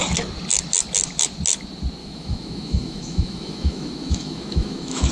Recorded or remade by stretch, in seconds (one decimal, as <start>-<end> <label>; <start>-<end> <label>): 0.0-2.0 recorded; 2.0-5.1 remade